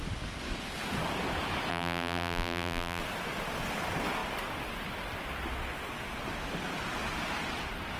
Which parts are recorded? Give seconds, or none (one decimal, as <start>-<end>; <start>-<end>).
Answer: 0.0-1.7; 3.0-8.0